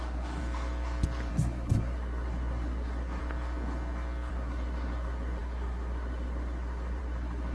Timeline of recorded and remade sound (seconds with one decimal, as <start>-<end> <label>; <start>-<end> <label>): 0.0-0.4 remade; 0.4-1.3 recorded; 1.3-3.2 remade; 3.2-4.3 recorded; 4.3-7.5 remade

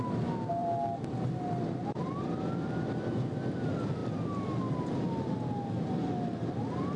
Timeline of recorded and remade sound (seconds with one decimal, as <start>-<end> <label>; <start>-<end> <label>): 0.0-7.0 recorded